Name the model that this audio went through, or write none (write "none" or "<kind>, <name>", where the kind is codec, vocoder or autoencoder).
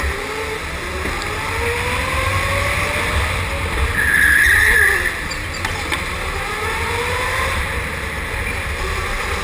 none